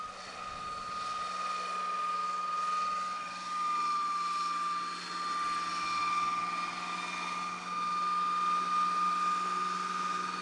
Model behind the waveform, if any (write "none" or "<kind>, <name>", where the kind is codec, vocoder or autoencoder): none